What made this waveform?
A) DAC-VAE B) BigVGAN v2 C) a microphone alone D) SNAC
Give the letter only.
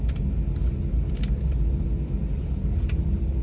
C